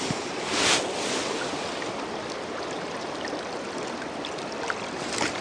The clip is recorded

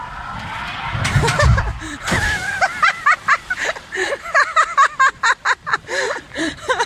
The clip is remade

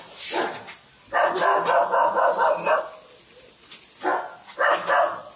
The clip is recorded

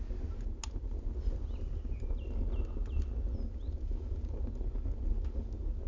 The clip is recorded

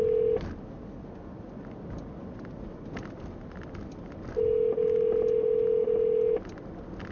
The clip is recorded